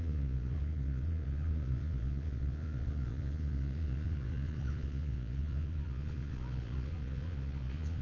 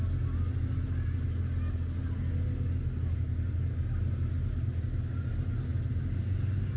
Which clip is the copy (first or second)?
first